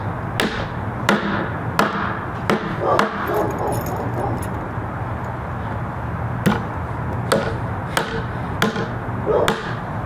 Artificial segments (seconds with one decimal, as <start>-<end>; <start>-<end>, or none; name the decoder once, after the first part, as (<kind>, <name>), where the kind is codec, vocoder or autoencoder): 9.6-10.1 (vocoder, BigVGAN v2)